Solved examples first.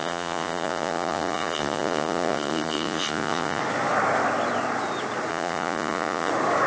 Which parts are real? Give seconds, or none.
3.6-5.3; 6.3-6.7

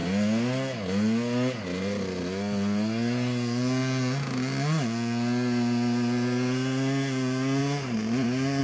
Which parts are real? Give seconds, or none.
0.0-8.6

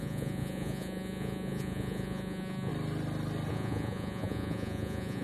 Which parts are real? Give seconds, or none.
2.7-3.5

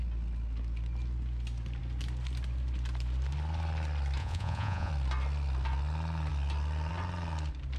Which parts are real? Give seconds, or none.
0.0-4.2; 4.9-7.8

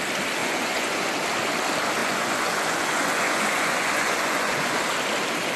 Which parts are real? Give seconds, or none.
0.0-0.4; 1.1-2.0; 4.8-5.6

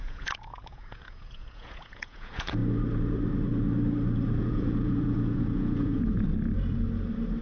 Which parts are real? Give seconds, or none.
2.6-4.4; 6.3-7.4